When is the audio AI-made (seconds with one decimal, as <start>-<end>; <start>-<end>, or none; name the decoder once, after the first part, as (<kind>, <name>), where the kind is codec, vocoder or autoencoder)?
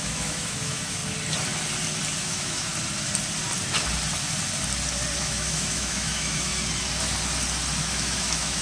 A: 0.0-1.0 (autoencoder, DAC-VAE); 2.2-2.7; 5.2-6.5; 7.8-8.6